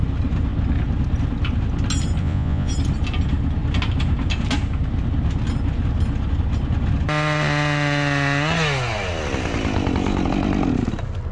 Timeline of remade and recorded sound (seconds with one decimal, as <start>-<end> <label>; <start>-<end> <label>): 0.0-2.2 recorded; 2.2-2.7 remade; 2.7-11.3 recorded